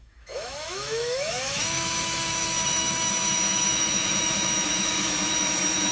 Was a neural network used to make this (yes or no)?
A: yes